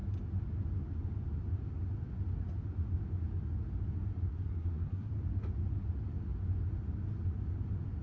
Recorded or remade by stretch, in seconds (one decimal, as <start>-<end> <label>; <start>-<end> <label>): 0.0-4.3 recorded; 4.3-5.1 remade; 5.1-8.0 recorded